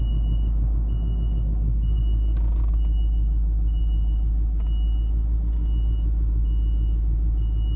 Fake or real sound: real